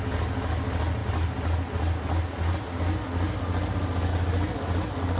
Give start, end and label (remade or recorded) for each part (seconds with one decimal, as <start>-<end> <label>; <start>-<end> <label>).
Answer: 0.0-5.2 recorded

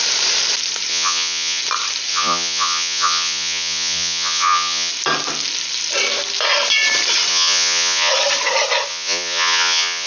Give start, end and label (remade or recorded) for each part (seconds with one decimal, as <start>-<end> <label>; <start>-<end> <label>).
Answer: 0.0-0.9 recorded; 0.9-1.6 remade; 1.6-2.1 recorded; 2.1-4.9 remade; 4.9-7.3 recorded; 7.3-8.1 remade; 8.1-8.9 recorded; 8.9-10.1 remade

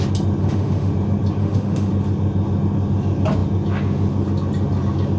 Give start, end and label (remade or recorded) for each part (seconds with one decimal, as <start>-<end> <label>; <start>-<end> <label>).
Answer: 0.0-0.4 recorded; 0.4-0.9 remade; 0.9-1.4 recorded; 1.4-1.9 remade; 1.9-5.2 recorded

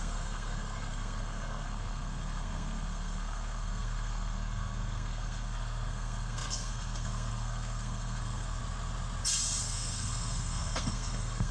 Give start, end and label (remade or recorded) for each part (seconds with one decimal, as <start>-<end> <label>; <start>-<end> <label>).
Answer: 0.0-8.6 remade; 8.6-9.6 recorded; 9.6-11.5 remade

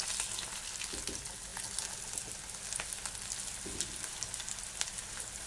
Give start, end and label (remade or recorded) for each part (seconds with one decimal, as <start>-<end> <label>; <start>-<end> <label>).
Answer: 0.0-5.5 recorded

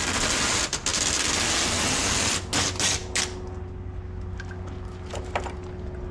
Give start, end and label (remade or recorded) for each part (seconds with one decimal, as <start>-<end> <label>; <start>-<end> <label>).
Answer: 0.0-6.1 recorded

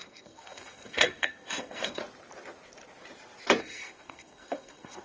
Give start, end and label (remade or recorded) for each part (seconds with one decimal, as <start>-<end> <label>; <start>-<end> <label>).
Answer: 0.0-2.0 remade; 2.0-3.6 recorded; 3.6-5.0 remade

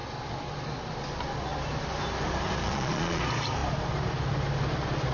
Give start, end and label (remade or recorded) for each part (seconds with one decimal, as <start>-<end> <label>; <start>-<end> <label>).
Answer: 0.0-2.6 recorded; 2.6-3.2 remade; 3.2-5.1 recorded